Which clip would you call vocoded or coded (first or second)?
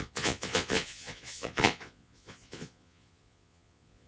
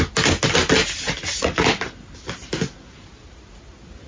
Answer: first